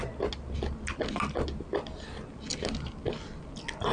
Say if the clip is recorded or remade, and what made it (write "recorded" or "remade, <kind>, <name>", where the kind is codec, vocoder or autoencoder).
recorded